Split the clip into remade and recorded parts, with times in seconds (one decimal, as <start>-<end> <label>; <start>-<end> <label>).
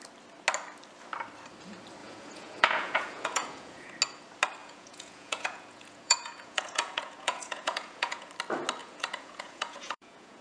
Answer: 0.0-2.0 recorded; 2.0-3.9 remade; 3.9-4.6 recorded; 4.6-8.3 remade; 8.3-8.8 recorded; 8.8-10.4 remade